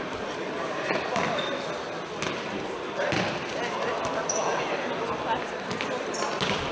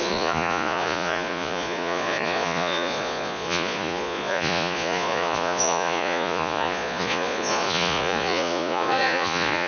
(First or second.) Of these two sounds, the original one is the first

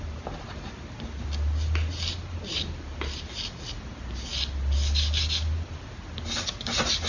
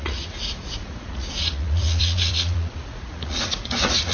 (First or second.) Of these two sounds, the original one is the first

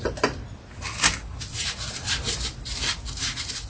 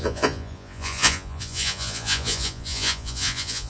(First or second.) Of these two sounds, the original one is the first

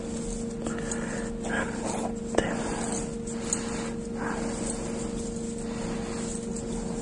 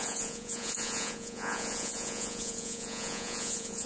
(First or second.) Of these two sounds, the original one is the first